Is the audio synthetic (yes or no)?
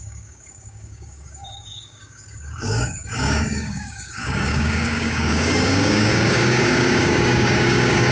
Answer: yes